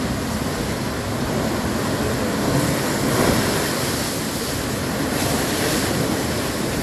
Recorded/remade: recorded